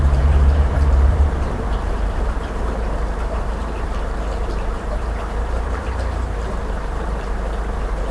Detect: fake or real fake